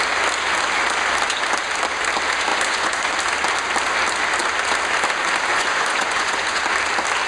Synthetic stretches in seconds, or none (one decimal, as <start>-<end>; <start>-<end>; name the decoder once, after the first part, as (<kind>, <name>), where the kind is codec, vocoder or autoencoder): 2.5-3.1 (vocoder, Vocos); 5.5-6.6